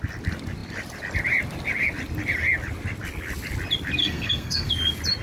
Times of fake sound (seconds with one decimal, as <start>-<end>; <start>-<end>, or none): 4.0-4.7